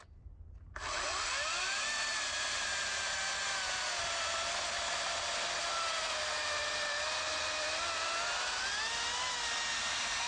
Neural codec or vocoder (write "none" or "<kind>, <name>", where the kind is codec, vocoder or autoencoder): none